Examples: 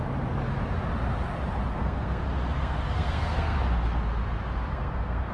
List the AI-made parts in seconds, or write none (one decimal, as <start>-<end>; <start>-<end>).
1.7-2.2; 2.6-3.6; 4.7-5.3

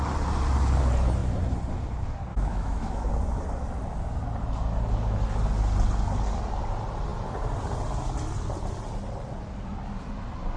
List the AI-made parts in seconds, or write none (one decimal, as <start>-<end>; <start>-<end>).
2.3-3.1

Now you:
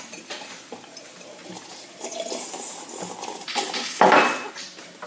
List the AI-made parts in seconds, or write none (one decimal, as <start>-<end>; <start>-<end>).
none

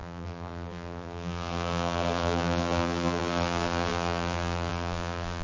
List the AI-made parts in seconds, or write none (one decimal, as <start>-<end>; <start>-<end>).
0.0-5.4